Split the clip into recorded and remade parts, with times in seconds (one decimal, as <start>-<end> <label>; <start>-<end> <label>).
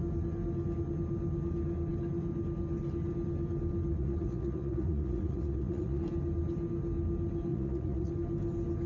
0.0-3.9 recorded; 3.9-6.0 remade; 6.0-7.5 recorded; 7.5-8.1 remade; 8.1-8.9 recorded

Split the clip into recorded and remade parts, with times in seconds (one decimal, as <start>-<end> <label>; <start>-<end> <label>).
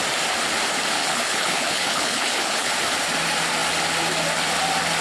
0.0-1.0 recorded; 1.0-2.7 remade; 2.7-5.0 recorded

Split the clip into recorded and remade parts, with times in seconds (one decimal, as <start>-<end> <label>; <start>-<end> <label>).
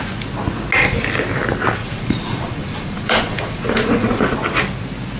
0.0-1.8 recorded; 1.8-4.2 remade; 4.2-5.2 recorded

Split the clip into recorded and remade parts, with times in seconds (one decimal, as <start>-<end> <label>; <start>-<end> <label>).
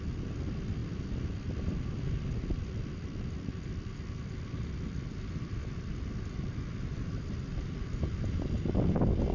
0.0-9.3 recorded